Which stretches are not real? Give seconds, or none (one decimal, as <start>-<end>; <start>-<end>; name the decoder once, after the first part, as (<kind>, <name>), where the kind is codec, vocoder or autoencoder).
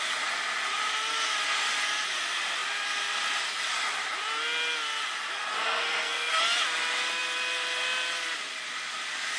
5.6-6.4 (codec, SNAC)